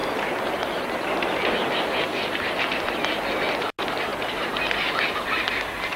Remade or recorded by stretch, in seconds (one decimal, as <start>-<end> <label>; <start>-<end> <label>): 0.0-4.1 recorded; 4.1-4.6 remade; 4.6-6.0 recorded